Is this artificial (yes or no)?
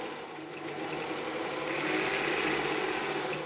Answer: no